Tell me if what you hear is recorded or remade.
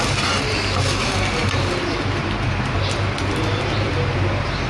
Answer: recorded